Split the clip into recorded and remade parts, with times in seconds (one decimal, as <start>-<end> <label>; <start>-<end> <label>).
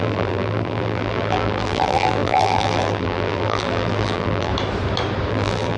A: 0.0-4.5 remade; 4.5-5.3 recorded; 5.3-5.8 remade